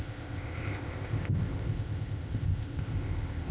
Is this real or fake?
fake